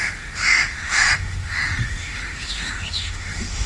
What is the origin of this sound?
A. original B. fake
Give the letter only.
B